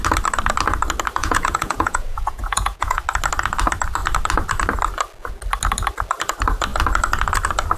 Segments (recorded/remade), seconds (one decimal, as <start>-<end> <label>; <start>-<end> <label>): 0.0-1.2 recorded; 1.2-3.0 remade; 3.0-7.8 recorded